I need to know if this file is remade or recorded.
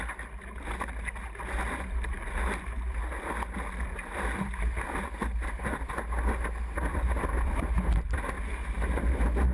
recorded